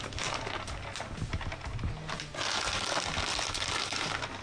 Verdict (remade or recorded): recorded